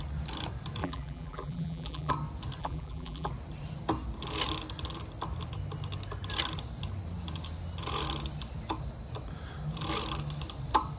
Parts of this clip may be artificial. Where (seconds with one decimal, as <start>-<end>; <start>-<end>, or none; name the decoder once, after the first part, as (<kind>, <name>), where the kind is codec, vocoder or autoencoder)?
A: 0.8-2.1 (vocoder, BigVGAN v2); 2.6-3.3